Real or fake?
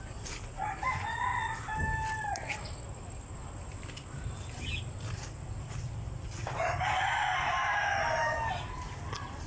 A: real